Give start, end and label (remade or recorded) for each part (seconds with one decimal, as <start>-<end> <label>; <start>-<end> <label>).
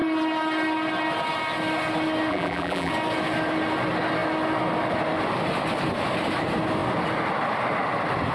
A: 0.0-2.3 recorded; 2.3-2.9 remade; 2.9-8.3 recorded